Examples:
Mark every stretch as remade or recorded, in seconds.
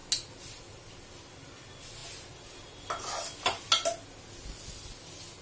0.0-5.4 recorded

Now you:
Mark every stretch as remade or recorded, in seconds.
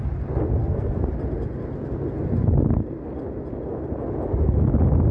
0.0-0.6 recorded; 0.6-1.1 remade; 1.1-5.1 recorded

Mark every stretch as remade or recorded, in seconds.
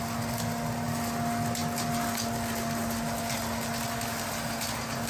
0.0-5.1 recorded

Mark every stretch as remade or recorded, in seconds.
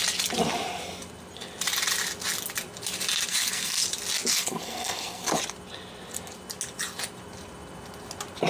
0.0-3.3 recorded; 3.3-3.8 remade; 3.8-4.3 recorded; 4.3-5.4 remade; 5.4-8.5 recorded